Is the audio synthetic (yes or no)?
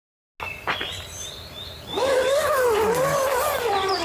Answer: no